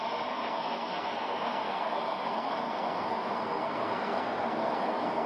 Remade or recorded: remade